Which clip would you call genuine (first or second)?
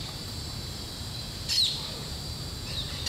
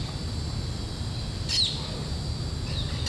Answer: second